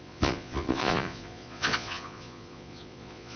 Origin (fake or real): fake